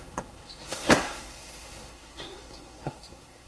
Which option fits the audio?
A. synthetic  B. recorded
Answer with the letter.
A